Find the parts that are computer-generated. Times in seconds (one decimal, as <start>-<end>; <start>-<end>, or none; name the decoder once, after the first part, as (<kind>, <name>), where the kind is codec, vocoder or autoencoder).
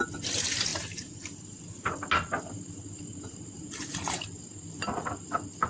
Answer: 0.7-1.9 (vocoder, BigVGAN v2); 3.1-4.0